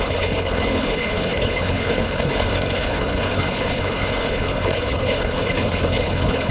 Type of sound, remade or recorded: remade